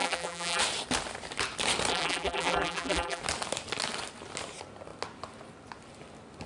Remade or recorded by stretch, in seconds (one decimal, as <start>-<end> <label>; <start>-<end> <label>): 0.0-0.6 remade; 0.6-1.9 recorded; 1.9-3.2 remade; 3.2-6.5 recorded